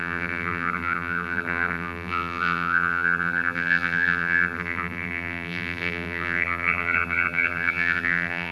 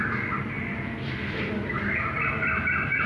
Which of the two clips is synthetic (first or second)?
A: first